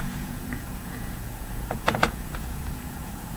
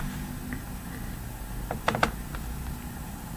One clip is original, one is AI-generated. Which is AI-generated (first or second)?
first